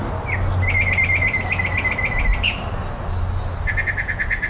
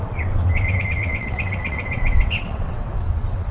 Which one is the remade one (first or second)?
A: second